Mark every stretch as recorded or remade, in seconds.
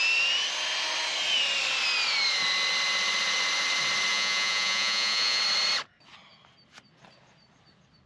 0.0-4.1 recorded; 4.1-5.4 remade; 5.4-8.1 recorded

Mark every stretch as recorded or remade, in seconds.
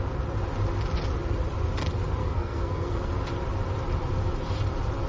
0.0-2.2 recorded; 2.2-3.1 remade; 3.1-5.1 recorded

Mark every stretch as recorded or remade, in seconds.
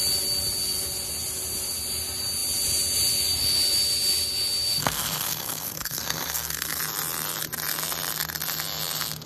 0.0-4.8 recorded; 4.8-6.8 remade; 6.8-9.3 recorded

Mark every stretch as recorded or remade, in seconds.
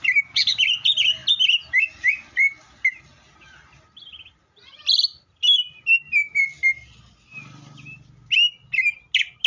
0.0-9.5 recorded